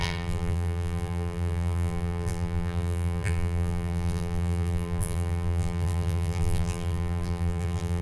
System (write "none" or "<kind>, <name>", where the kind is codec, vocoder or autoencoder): vocoder, BigVGAN v2